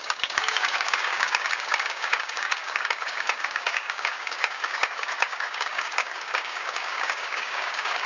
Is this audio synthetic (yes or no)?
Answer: yes